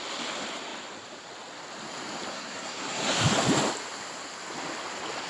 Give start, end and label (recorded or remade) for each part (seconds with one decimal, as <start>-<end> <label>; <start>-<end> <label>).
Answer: 0.0-2.3 recorded; 2.3-3.1 remade; 3.1-5.3 recorded